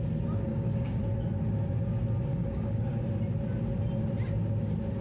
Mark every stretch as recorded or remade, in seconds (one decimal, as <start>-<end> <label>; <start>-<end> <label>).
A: 0.0-0.5 recorded; 0.5-1.0 remade; 1.0-2.3 recorded; 2.3-3.0 remade; 3.0-5.0 recorded

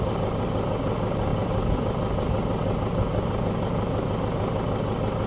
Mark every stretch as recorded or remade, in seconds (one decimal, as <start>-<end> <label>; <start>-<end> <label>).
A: 0.0-5.3 recorded

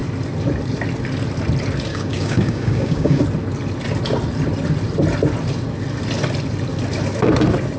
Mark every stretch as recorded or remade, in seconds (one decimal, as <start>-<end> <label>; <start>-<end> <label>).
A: 0.0-1.9 recorded; 1.9-3.2 remade; 3.2-7.8 recorded

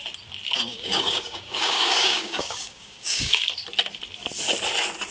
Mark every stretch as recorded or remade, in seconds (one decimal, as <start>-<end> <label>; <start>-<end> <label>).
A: 0.0-0.7 recorded; 0.7-3.4 remade; 3.4-5.1 recorded

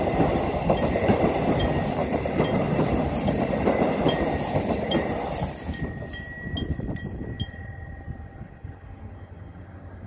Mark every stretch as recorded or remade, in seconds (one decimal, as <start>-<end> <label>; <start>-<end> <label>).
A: 0.0-10.1 recorded

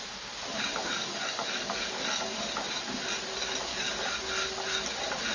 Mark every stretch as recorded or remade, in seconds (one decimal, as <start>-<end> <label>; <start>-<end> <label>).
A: 0.0-0.8 recorded; 0.8-2.4 remade; 2.4-3.7 recorded; 3.7-4.2 remade; 4.2-5.3 recorded

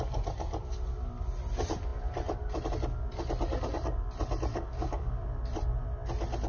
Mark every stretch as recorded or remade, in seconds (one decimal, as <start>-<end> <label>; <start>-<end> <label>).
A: 0.0-4.5 recorded; 4.5-5.1 remade; 5.1-6.5 recorded